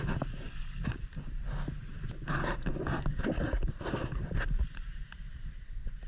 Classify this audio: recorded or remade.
recorded